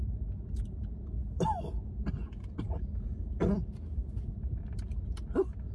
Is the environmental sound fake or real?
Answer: real